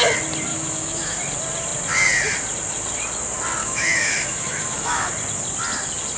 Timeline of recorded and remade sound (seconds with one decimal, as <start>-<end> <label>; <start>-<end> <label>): 0.0-0.5 recorded; 0.5-1.2 remade; 1.2-3.6 recorded; 3.6-5.1 remade; 5.1-6.2 recorded

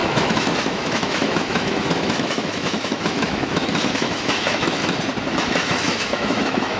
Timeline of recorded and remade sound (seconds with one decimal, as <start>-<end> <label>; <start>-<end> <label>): 0.0-4.8 remade; 4.8-5.3 recorded; 5.3-6.8 remade